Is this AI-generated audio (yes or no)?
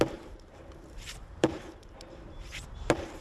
yes